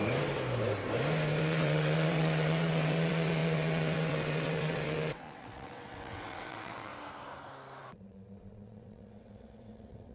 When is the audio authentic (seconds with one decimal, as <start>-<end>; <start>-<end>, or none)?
0.0-1.4; 6.9-7.8